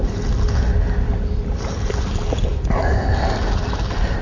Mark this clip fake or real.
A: real